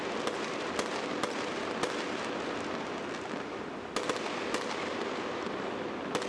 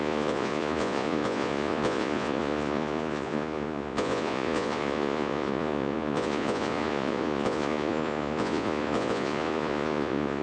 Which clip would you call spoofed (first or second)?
second